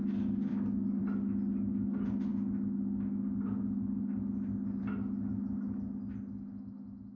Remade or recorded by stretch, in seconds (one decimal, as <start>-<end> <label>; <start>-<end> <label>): 0.0-0.5 recorded; 0.5-1.0 remade; 1.0-7.1 recorded